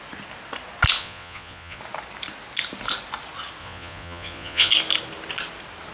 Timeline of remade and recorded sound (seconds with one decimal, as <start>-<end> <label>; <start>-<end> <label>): 0.0-1.0 recorded; 1.0-1.8 remade; 1.8-3.6 recorded; 3.6-4.7 remade; 4.7-5.9 recorded